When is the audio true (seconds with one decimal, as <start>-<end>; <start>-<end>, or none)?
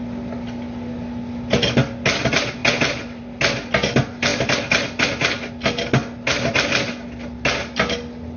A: 0.0-8.4